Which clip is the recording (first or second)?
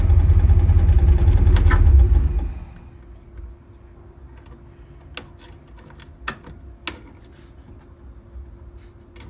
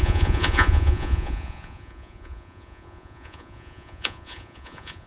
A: first